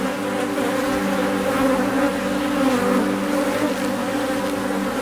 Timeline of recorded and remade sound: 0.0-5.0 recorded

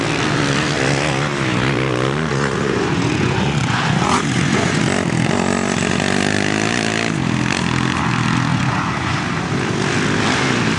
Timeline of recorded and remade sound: 0.0-2.3 recorded; 2.3-4.8 remade; 4.8-8.5 recorded; 8.5-9.2 remade; 9.2-10.8 recorded

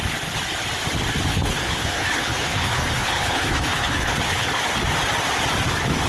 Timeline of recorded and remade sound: 0.0-1.3 recorded; 1.3-4.6 remade; 4.6-6.1 recorded

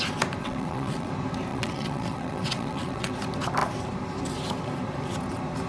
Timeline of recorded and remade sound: 0.0-0.4 recorded; 0.4-1.1 remade; 1.1-1.5 recorded; 1.5-3.1 remade; 3.1-5.7 recorded

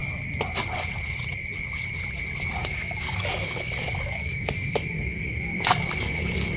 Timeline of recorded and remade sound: 0.0-2.6 recorded; 2.6-6.6 remade

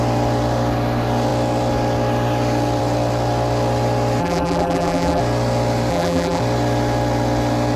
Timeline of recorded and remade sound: 0.0-4.2 recorded; 4.2-5.2 remade; 5.2-5.9 recorded; 5.9-6.4 remade; 6.4-7.8 recorded

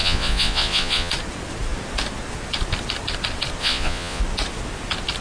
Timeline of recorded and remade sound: 0.0-1.1 remade; 1.1-3.6 recorded; 3.6-4.2 remade; 4.2-5.2 recorded